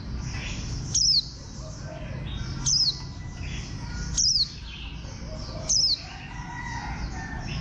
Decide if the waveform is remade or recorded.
recorded